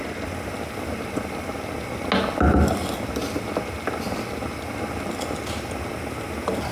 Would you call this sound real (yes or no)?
yes